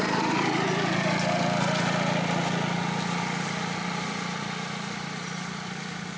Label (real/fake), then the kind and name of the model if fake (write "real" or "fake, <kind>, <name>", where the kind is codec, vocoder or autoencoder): real